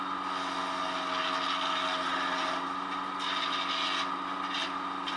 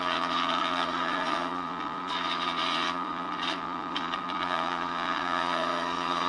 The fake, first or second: second